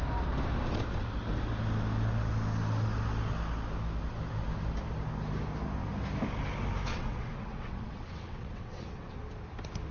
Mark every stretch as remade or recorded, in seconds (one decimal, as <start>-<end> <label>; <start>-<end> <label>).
0.0-6.9 recorded; 6.9-9.2 remade; 9.2-9.9 recorded